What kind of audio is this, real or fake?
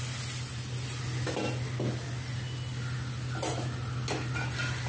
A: real